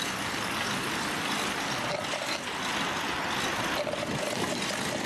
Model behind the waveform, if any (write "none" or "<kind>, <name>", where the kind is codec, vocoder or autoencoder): none